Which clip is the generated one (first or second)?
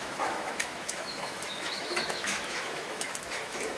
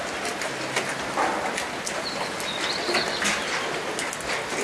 first